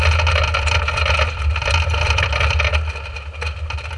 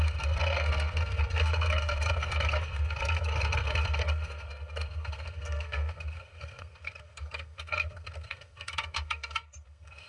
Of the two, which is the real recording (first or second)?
first